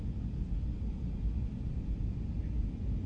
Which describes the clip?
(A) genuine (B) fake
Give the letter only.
A